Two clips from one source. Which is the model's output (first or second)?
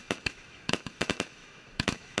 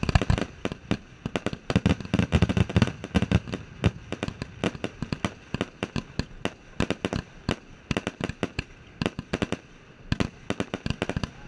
first